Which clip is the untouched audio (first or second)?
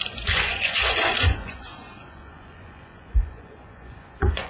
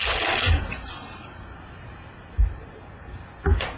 second